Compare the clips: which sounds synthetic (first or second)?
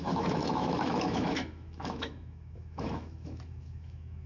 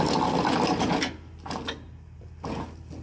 first